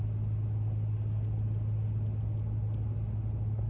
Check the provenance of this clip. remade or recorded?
recorded